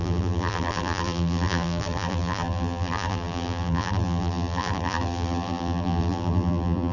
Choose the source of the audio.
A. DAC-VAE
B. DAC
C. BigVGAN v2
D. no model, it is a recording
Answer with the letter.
C